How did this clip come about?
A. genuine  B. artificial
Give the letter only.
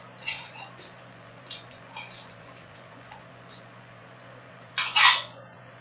B